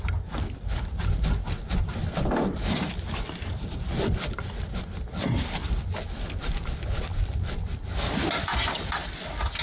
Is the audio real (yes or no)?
yes